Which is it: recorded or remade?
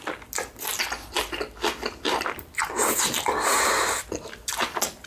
recorded